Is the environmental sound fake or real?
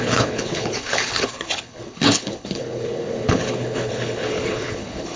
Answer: fake